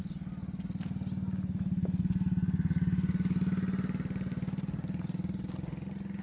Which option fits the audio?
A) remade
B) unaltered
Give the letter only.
B